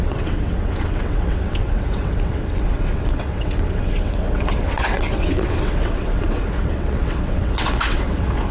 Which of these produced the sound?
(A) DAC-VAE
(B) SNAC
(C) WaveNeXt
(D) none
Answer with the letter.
C